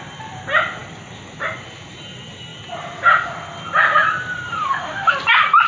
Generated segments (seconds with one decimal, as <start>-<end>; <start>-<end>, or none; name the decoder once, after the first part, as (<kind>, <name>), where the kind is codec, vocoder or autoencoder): 4.6-5.1 (autoencoder, DAC-VAE)